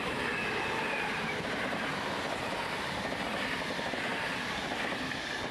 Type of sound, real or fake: real